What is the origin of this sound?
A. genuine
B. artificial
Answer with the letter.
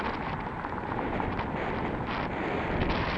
A